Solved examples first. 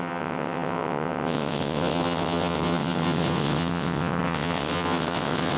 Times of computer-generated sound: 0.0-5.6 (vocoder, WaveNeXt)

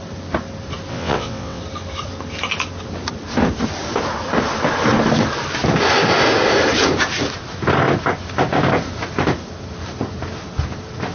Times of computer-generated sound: 0.9-1.6 (vocoder, WaveNeXt)

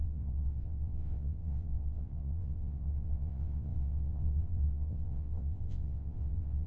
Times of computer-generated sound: 0.0-6.7 (vocoder, WaveNeXt)

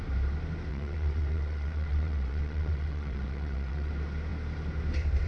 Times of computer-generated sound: 0.7-3.9 (vocoder, WaveNeXt)